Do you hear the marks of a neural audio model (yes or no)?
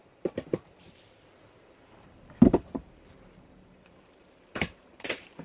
yes